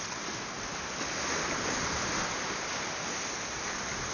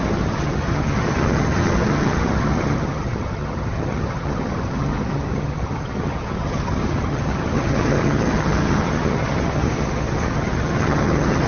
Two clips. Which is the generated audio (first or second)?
second